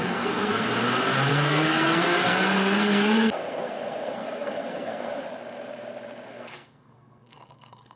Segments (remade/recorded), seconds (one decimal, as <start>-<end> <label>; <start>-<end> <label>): 0.0-0.7 remade; 0.7-1.3 recorded; 1.3-5.2 remade; 5.2-6.3 recorded; 6.3-8.0 remade